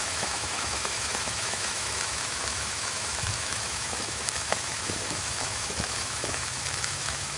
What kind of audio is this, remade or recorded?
remade